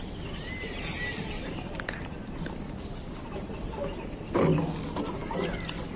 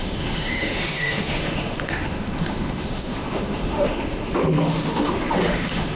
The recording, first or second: first